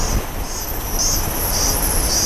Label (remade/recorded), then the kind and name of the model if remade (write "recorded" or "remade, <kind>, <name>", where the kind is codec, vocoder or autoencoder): recorded